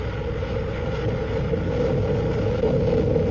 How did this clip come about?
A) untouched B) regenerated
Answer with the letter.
A